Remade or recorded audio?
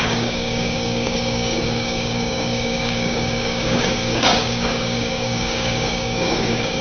remade